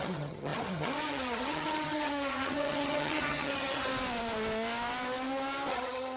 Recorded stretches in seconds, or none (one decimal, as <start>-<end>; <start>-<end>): 3.9-5.7